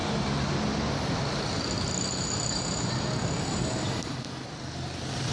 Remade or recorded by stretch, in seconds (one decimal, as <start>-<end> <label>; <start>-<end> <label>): 0.0-5.3 recorded